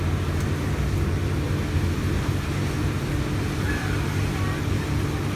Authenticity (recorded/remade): recorded